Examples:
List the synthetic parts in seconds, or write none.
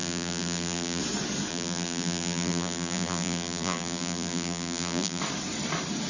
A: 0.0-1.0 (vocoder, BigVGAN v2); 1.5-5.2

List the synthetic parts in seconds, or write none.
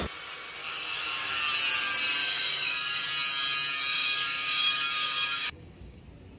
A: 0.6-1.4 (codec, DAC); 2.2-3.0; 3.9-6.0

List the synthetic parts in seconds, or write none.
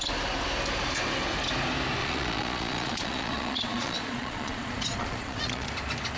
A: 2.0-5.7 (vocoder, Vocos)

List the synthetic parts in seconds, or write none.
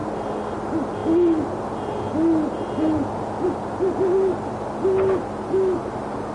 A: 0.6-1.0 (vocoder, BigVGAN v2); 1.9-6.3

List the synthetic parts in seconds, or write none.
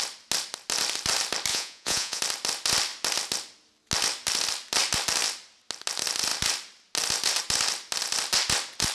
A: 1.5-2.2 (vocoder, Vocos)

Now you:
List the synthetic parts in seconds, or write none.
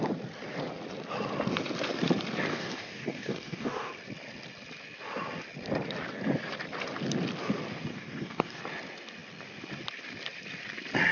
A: 2.5-3.9 (codec, DAC); 7.9-8.6